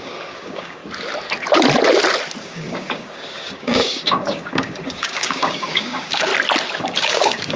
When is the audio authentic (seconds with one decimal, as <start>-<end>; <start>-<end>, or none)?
0.8-2.4; 6.3-6.8